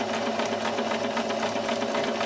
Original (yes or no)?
yes